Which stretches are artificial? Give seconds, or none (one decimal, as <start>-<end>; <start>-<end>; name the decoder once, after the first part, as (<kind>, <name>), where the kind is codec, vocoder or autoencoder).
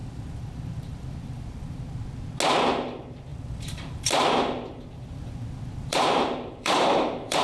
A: 0.0-1.8 (vocoder, BigVGAN v2); 3.3-7.4